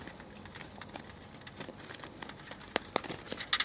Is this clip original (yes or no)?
yes